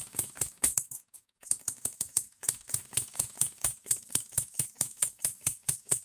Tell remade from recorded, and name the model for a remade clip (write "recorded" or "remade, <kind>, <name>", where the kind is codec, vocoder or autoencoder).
remade, codec, DAC